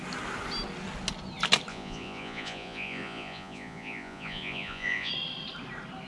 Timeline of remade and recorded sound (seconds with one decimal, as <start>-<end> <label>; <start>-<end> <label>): 0.0-1.7 recorded; 1.7-5.1 remade; 5.1-6.1 recorded